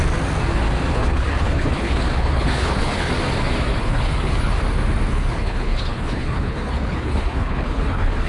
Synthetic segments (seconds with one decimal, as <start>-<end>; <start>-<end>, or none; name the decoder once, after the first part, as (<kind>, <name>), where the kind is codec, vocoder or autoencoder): 0.9-3.1 (codec, HILCodec); 3.8-4.6; 5.1-8.3